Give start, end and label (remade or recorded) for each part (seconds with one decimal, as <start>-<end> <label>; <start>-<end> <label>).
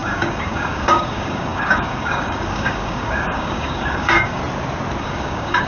0.0-4.4 remade; 4.4-5.0 recorded; 5.0-5.7 remade